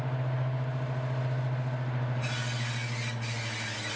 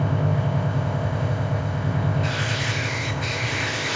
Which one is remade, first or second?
second